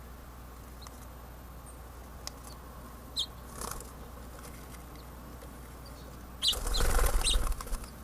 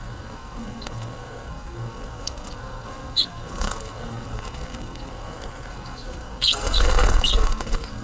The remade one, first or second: second